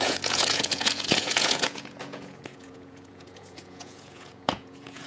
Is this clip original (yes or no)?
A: no